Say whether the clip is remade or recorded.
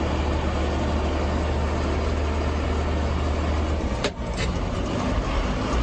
recorded